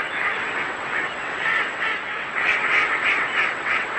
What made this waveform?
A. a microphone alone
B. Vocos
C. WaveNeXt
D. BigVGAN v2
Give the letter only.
C